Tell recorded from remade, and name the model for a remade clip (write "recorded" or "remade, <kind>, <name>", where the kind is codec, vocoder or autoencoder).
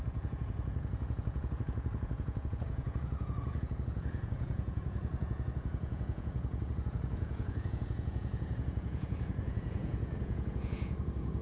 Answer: remade, vocoder, Vocos